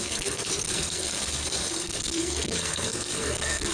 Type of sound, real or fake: fake